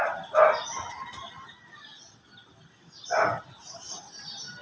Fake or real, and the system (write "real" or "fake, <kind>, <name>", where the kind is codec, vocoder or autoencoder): real